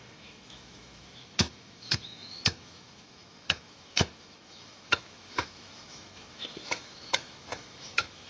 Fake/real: fake